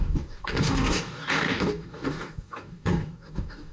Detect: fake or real fake